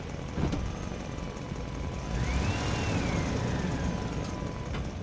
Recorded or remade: recorded